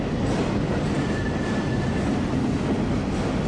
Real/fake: real